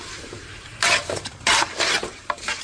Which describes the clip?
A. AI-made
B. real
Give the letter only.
A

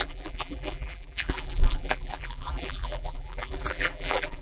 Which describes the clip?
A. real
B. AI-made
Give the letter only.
B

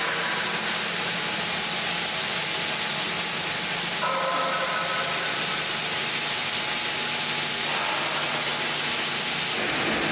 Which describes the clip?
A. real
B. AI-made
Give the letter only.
A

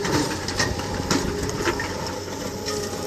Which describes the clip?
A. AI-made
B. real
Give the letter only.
A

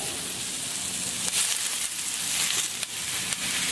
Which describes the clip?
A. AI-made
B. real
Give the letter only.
B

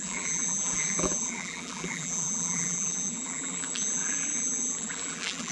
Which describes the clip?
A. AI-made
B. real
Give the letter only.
A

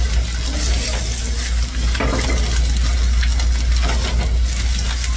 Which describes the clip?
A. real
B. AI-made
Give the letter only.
A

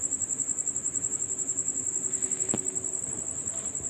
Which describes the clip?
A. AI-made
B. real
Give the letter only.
B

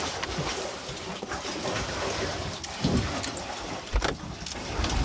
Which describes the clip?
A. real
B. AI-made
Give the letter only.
B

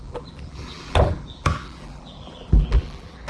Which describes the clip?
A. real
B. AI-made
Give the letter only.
B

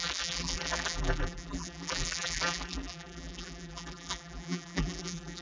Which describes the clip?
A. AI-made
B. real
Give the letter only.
A